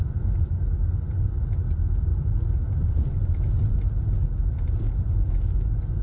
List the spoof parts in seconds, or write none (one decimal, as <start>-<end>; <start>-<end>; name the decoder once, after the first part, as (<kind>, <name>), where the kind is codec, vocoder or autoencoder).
none